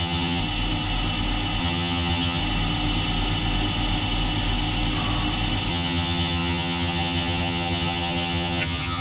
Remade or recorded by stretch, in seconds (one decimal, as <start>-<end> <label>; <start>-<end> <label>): 0.0-0.4 remade; 0.4-1.6 recorded; 1.6-2.4 remade; 2.4-5.7 recorded; 5.7-9.0 remade